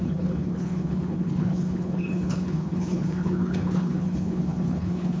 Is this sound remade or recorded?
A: remade